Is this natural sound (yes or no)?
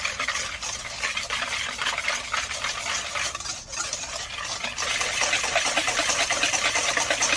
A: yes